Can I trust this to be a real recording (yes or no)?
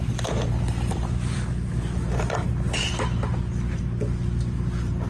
yes